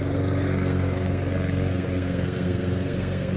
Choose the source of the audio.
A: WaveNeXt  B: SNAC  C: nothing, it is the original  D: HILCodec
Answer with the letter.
B